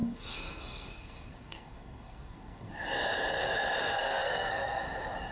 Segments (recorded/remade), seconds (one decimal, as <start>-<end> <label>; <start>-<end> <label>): 0.0-2.7 remade; 2.7-3.8 recorded; 3.8-4.8 remade; 4.8-5.3 recorded